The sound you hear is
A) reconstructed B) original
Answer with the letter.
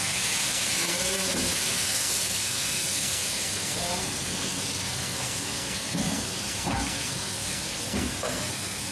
A